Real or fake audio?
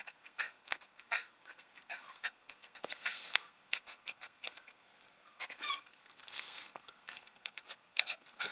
fake